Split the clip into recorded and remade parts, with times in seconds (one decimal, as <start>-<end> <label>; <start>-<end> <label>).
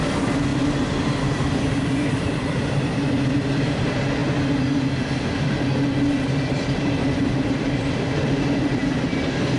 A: 0.0-4.2 remade; 4.2-5.9 recorded; 5.9-8.8 remade; 8.8-9.6 recorded